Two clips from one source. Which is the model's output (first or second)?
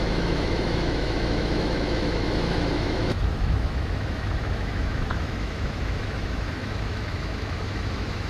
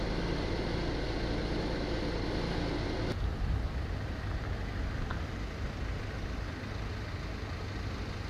first